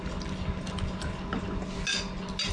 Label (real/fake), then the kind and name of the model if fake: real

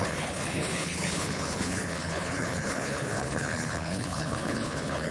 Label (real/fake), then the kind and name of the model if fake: fake, codec, HILCodec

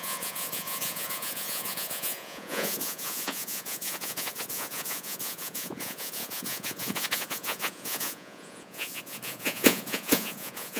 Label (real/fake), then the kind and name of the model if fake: fake, vocoder, Vocos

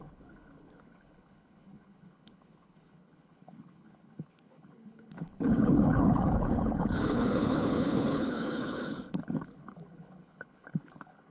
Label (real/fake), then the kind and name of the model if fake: fake, codec, HILCodec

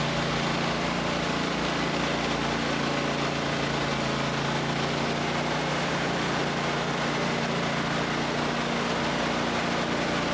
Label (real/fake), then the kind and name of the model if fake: real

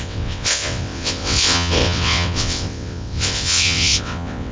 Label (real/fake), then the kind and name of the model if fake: fake, vocoder, WaveNeXt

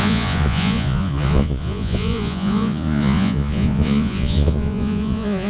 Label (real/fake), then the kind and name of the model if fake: fake, vocoder, Vocos